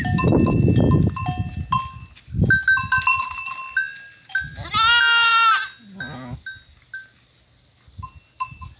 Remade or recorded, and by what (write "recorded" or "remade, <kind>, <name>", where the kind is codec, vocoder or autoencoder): recorded